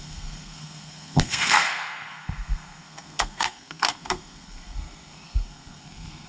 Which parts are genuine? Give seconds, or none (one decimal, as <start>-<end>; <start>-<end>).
none